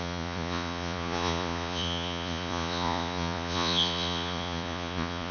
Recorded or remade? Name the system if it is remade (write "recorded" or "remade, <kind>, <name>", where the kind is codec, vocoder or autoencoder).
remade, vocoder, Vocos